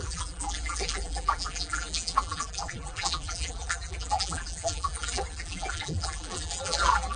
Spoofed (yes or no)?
yes